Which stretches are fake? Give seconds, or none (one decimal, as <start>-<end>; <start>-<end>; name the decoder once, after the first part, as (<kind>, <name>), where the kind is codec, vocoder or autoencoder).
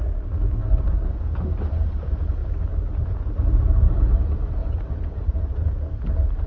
0.6-1.1 (vocoder, BigVGAN v2); 2.4-3.5; 4.6-5.2